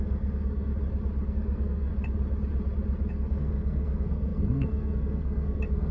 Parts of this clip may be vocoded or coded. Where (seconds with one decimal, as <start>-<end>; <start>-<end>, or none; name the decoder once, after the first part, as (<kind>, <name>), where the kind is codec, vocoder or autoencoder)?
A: 0.0-0.7 (codec, SNAC); 1.3-1.9; 3.1-5.9